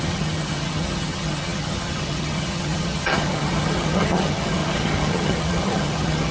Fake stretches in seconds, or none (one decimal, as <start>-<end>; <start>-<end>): 0.0-6.3